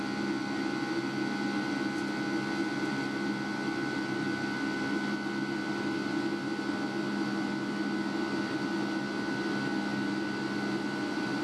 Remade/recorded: recorded